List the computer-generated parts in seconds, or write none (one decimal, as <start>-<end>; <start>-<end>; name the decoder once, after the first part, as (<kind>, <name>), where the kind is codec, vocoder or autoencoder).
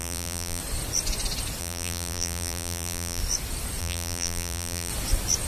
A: 0.0-0.6 (vocoder, BigVGAN v2); 1.6-3.2; 3.8-4.9